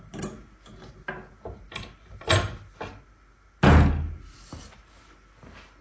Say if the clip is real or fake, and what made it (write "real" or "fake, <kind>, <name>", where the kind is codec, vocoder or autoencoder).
real